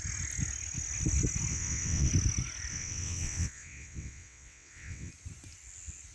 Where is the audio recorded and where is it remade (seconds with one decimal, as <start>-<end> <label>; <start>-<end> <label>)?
0.0-1.5 recorded; 1.5-2.1 remade; 2.1-2.7 recorded; 2.7-5.1 remade; 5.1-6.1 recorded